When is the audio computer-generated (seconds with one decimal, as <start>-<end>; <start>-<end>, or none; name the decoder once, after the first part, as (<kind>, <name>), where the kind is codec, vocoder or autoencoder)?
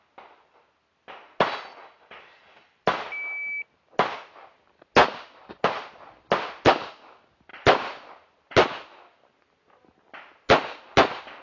5.0-5.5 (vocoder, BigVGAN v2); 7.5-8.1